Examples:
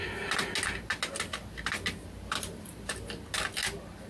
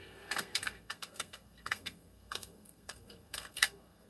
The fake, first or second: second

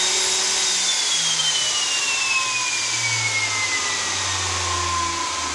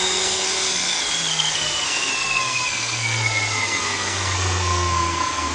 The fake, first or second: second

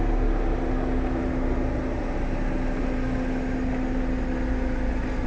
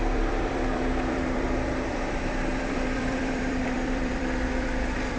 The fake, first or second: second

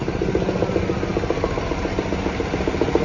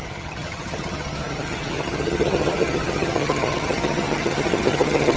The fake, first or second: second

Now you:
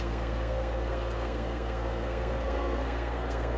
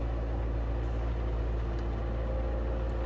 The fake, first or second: first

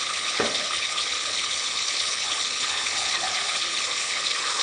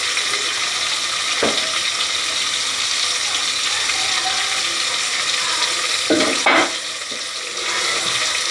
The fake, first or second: first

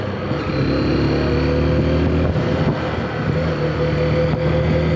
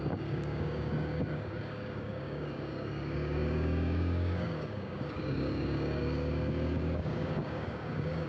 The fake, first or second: second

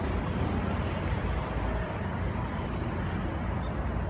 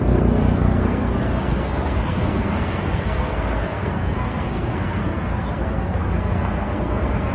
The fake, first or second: second